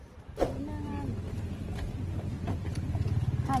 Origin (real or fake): real